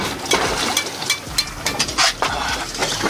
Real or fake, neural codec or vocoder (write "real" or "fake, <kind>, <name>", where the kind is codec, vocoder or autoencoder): real